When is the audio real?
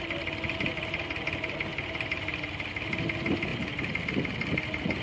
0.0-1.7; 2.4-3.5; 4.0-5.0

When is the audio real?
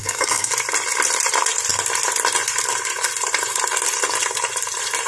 0.5-5.1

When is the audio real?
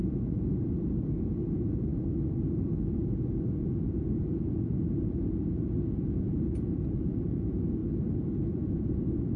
7.8-8.4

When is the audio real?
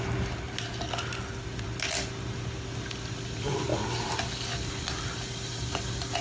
0.0-6.2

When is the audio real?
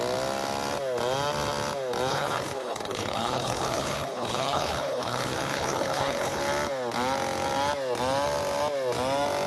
0.0-2.1; 6.4-9.5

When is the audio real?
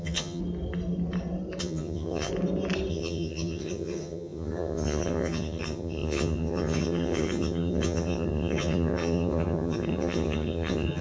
0.4-1.6; 2.3-2.9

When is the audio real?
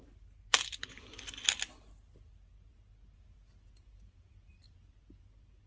0.0-5.7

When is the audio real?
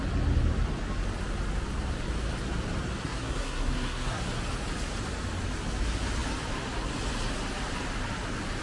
0.0-3.0; 4.2-8.6